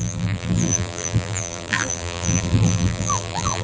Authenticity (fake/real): fake